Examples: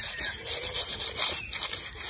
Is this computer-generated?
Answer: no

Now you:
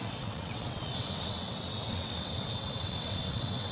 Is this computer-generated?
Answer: yes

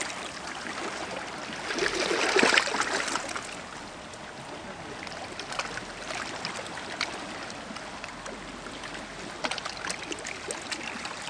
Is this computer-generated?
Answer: no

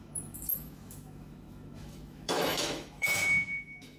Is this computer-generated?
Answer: yes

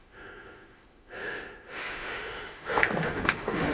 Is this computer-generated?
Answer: yes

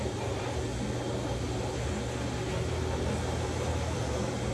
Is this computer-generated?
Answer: no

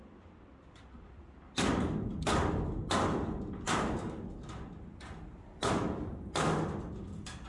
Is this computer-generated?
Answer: no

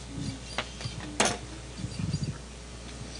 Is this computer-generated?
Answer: no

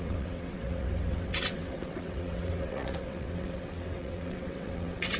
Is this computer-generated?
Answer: yes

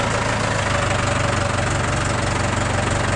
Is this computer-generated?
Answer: no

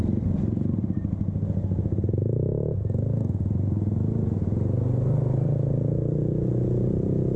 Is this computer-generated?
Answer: no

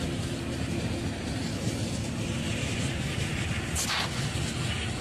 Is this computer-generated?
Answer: no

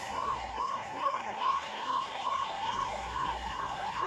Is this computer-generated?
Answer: yes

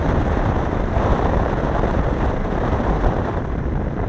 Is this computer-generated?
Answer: yes